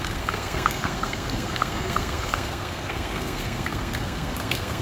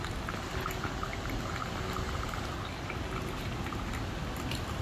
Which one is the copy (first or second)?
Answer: first